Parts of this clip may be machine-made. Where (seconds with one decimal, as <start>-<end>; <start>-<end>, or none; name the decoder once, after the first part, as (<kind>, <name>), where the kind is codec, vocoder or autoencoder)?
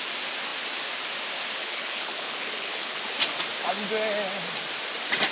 1.6-3.0 (codec, HILCodec)